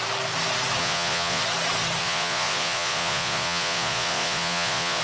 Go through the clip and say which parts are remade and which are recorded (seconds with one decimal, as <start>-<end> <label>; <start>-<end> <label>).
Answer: 0.0-0.8 recorded; 0.8-1.4 remade; 1.4-2.0 recorded; 2.0-5.0 remade